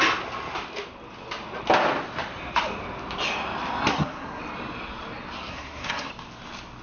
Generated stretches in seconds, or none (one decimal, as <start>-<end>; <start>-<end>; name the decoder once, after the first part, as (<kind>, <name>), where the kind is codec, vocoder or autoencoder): 3.9-4.4 (codec, SNAC); 5.5-6.1